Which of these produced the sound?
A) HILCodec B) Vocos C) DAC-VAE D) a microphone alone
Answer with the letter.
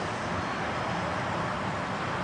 D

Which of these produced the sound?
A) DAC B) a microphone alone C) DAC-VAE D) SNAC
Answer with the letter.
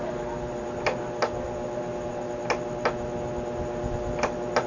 B